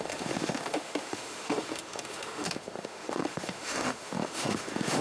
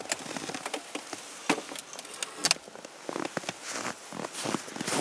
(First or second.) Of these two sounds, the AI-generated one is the first